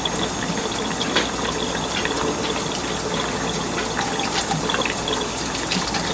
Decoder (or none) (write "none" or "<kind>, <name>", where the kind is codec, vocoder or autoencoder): none